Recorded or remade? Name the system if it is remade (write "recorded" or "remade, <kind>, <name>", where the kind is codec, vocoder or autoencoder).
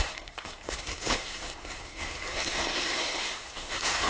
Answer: remade, codec, SNAC